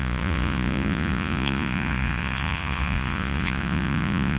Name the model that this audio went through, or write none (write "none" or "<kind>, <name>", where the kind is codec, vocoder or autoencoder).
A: vocoder, Vocos